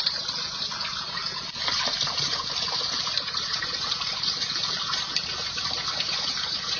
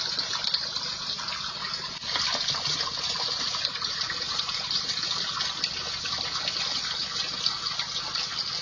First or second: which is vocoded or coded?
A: first